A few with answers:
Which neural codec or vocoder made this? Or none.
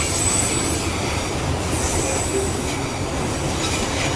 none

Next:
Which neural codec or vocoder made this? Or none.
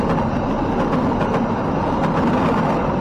none